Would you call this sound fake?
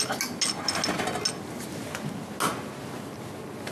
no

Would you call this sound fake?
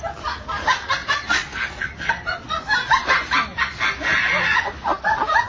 no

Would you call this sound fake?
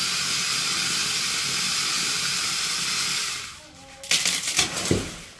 no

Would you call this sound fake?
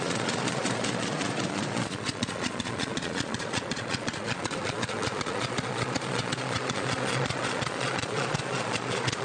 yes